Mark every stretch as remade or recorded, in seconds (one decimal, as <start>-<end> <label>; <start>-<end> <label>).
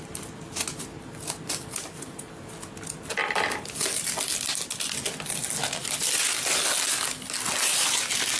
0.0-8.4 recorded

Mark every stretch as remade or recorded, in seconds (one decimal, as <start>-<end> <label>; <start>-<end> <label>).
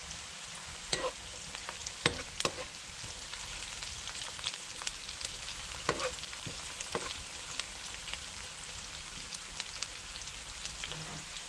0.0-0.6 recorded; 0.6-1.1 remade; 1.1-11.5 recorded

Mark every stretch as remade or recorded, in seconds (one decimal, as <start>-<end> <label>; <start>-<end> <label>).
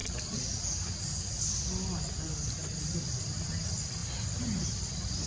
0.0-5.3 recorded